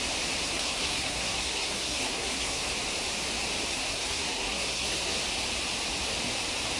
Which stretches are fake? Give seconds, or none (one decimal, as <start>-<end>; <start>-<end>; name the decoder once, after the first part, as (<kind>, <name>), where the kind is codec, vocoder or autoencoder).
0.4-2.6 (codec, SNAC); 3.7-5.2